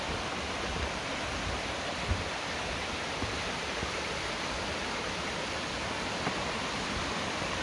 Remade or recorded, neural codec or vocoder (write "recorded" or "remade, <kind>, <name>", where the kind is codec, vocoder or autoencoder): recorded